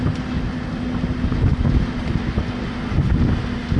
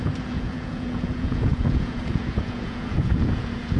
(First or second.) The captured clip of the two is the first